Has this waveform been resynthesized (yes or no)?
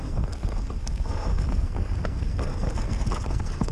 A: yes